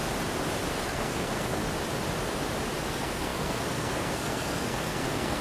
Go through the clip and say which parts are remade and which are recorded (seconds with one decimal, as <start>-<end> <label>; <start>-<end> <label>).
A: 0.0-0.7 recorded; 0.7-1.6 remade; 1.6-2.9 recorded; 2.9-5.4 remade